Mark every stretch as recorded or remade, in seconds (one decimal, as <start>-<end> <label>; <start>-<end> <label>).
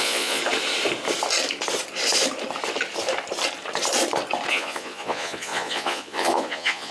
0.0-0.4 remade; 0.4-4.5 recorded; 4.5-6.9 remade